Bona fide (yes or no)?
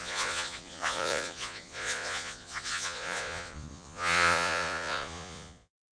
no